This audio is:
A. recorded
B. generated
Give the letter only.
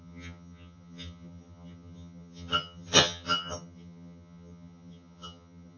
B